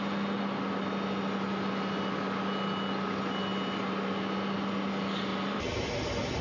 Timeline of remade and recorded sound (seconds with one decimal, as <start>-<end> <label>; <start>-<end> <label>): 0.0-5.3 recorded; 5.3-5.9 remade; 5.9-6.4 recorded